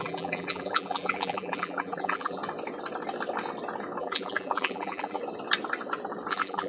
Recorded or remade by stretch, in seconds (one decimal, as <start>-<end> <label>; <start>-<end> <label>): 0.0-2.4 remade; 2.4-4.0 recorded; 4.0-5.2 remade; 5.2-6.3 recorded; 6.3-6.7 remade

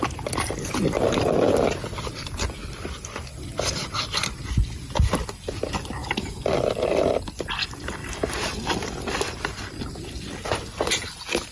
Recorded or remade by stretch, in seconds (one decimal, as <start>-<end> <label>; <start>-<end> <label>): 0.0-2.6 recorded; 2.6-4.5 remade; 4.5-6.0 recorded; 6.0-7.1 remade; 7.1-11.5 recorded